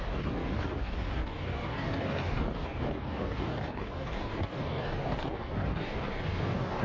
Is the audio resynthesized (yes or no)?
yes